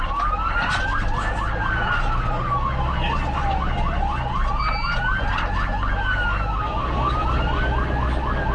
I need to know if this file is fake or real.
real